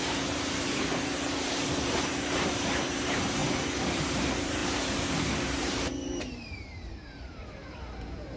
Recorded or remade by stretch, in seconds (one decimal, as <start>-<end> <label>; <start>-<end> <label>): 0.0-3.4 remade; 3.4-4.1 recorded; 4.1-7.4 remade; 7.4-8.4 recorded